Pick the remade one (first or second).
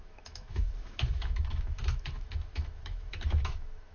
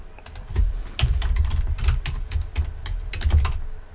first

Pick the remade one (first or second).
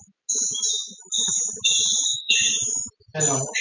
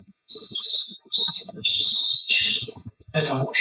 second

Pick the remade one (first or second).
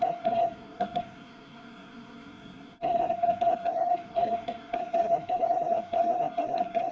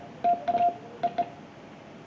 first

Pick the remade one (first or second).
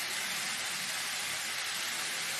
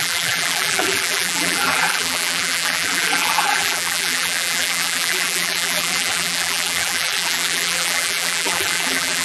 second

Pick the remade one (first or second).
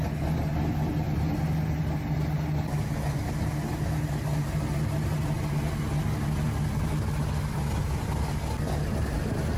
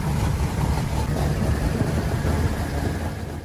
second